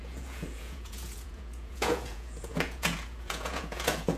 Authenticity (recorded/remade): remade